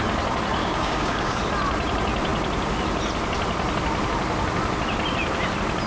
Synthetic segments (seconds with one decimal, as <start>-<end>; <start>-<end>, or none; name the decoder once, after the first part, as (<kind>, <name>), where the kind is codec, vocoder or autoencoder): 0.6-1.4 (codec, DAC)